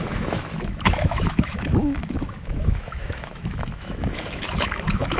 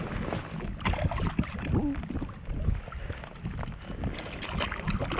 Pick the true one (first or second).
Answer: second